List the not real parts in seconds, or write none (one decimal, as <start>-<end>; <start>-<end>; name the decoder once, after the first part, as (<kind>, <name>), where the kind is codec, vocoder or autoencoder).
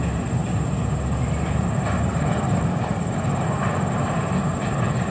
none